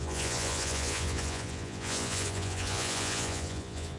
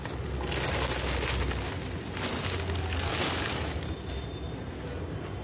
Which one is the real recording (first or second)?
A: second